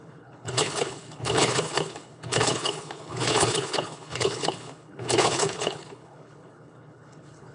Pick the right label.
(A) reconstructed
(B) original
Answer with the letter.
A